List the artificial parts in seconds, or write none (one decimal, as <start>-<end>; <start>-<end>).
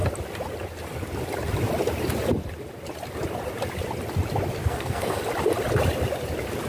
4.6-5.2